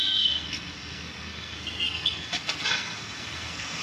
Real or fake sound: fake